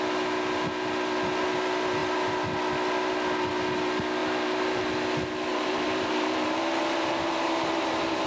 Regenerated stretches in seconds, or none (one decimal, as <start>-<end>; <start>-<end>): 4.2-4.8; 5.5-8.3